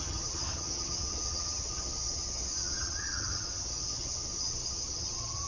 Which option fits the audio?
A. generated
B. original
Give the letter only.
A